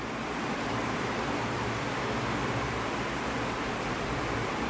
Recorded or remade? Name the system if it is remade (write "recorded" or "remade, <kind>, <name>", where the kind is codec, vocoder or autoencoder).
remade, vocoder, BigVGAN v2